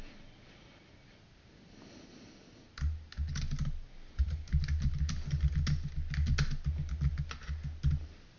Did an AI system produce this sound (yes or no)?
no